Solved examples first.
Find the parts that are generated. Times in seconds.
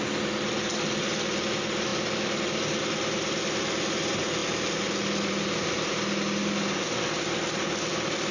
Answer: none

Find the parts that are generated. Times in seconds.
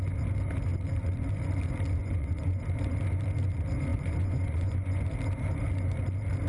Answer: 2.0-2.6 (vocoder, Vocos); 3.9-5.0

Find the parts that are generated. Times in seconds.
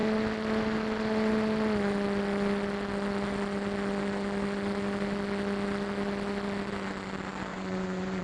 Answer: 7.5-8.2 (vocoder, Vocos)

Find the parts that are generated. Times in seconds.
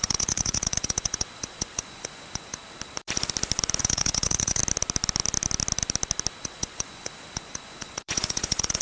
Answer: 0.0-2.6 (vocoder, Vocos); 3.8-4.6; 6.4-8.8